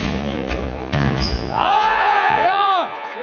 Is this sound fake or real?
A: fake